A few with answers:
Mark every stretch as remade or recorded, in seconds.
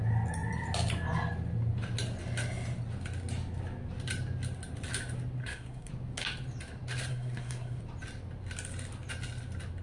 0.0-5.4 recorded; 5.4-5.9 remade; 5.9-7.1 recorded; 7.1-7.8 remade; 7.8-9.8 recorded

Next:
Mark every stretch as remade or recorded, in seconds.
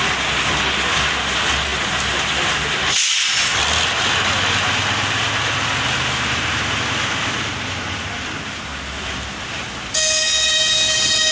0.0-11.3 recorded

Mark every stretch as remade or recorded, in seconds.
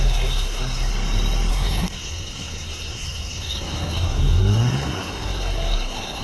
0.0-0.9 remade; 0.9-1.5 recorded; 1.5-6.2 remade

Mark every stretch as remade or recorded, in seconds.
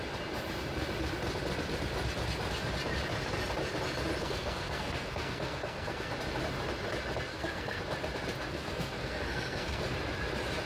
0.0-4.2 recorded; 4.2-6.1 remade; 6.1-7.3 recorded; 7.3-7.8 remade; 7.8-8.5 recorded; 8.5-9.8 remade; 9.8-10.7 recorded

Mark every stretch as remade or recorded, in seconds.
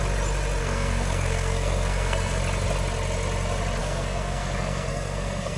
0.0-0.6 recorded; 0.6-2.4 remade; 2.4-3.8 recorded; 3.8-5.6 remade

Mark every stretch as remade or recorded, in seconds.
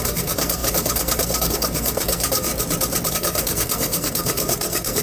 0.0-2.5 remade; 2.5-3.1 recorded; 3.1-5.0 remade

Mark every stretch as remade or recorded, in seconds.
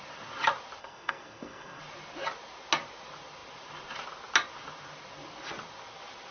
0.0-0.8 recorded; 0.8-1.8 remade; 1.8-6.3 recorded